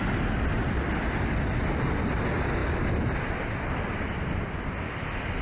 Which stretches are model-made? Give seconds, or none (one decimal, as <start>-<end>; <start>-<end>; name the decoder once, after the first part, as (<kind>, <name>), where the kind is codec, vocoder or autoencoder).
none